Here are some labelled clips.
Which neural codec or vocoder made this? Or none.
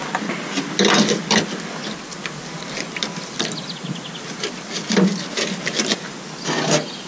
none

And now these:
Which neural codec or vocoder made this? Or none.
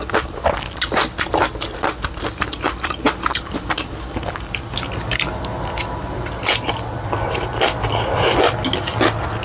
none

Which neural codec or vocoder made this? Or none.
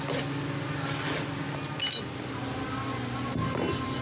none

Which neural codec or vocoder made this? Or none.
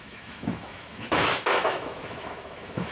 autoencoder, DAC-VAE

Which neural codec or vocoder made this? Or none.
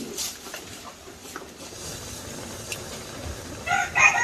none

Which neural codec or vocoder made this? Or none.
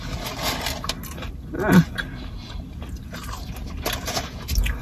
none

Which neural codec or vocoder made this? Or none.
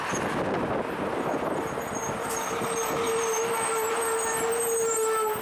none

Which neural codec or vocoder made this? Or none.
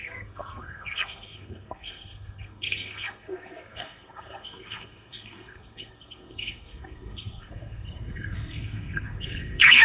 codec, SNAC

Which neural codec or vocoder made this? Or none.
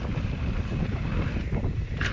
none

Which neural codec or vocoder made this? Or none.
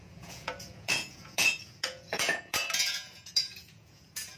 vocoder, Vocos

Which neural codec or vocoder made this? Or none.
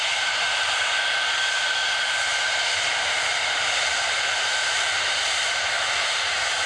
vocoder, BigVGAN v2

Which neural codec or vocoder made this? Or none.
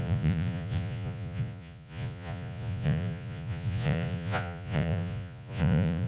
vocoder, Vocos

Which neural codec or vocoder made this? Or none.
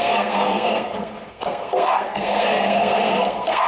codec, SNAC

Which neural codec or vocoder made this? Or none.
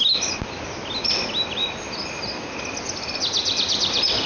none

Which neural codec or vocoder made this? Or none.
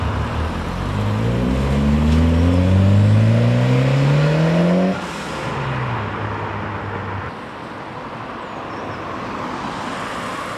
none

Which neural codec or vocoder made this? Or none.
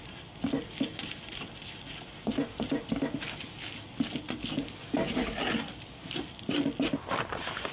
none